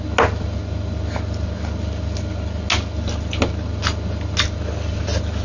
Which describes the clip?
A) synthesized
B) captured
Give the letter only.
B